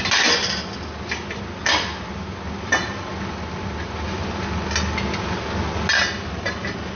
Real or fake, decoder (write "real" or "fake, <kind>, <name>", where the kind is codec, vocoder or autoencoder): real